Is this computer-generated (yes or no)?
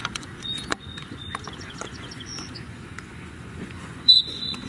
yes